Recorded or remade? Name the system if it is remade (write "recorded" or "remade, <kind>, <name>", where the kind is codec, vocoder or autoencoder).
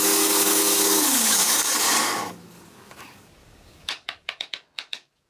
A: remade, codec, DAC